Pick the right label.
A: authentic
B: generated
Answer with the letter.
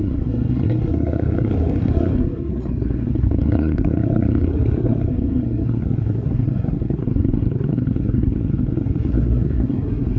B